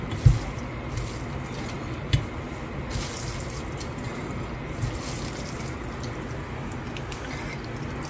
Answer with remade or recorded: recorded